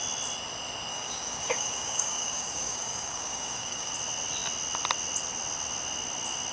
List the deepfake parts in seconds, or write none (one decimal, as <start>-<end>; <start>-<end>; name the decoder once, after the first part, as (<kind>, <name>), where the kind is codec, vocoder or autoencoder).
0.9-3.9 (codec, DAC)